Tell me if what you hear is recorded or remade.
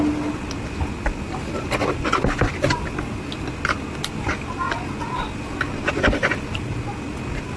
recorded